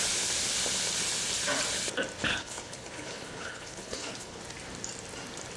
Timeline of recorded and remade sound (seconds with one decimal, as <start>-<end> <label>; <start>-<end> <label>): 0.0-2.3 recorded; 2.3-4.4 remade; 4.4-5.6 recorded